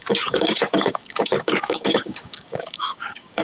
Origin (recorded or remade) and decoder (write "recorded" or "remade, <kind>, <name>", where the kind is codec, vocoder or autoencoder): remade, codec, DAC